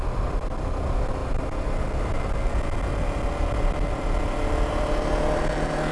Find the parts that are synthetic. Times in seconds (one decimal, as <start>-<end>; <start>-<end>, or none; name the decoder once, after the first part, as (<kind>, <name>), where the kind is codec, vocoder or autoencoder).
none